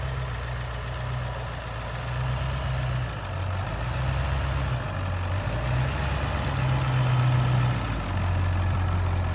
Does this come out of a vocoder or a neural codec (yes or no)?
no